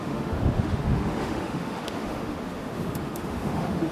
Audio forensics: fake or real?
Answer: fake